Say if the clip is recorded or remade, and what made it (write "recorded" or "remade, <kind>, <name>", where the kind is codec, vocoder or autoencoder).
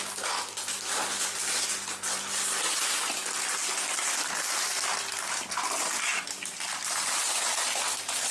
recorded